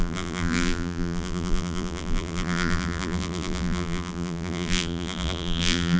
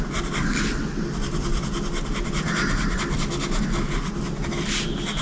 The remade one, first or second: first